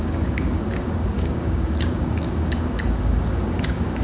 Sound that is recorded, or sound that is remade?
remade